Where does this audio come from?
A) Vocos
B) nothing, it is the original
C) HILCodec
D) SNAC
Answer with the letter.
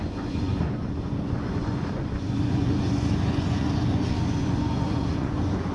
A